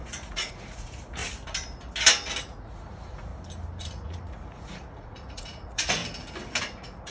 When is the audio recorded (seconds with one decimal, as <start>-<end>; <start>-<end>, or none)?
1.2-2.4; 3.3-3.8; 6.0-6.6

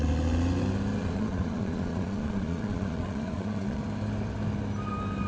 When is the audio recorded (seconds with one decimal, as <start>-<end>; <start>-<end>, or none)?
0.0-1.0; 3.8-5.3

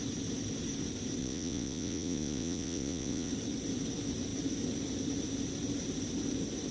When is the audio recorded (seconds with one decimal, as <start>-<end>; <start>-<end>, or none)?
0.0-1.2; 3.3-6.7

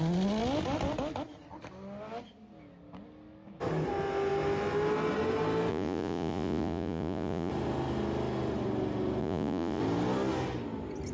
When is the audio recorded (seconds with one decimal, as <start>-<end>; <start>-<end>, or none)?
0.0-5.7; 7.5-9.2; 9.8-11.1

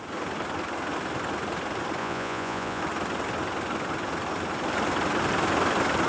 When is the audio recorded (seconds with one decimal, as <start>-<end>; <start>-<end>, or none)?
0.0-2.0; 2.8-6.1

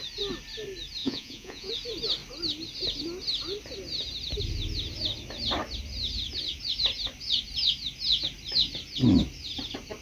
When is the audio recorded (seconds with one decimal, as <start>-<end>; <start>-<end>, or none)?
0.0-1.0; 1.7-10.0

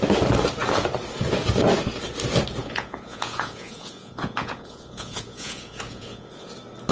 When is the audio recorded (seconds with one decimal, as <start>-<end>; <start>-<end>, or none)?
0.0-2.6; 6.5-6.9